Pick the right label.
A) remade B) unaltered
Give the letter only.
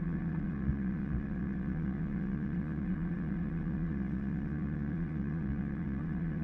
A